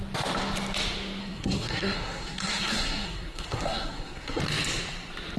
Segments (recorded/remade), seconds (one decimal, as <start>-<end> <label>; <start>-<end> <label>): 0.0-1.2 recorded; 1.2-4.4 remade; 4.4-5.4 recorded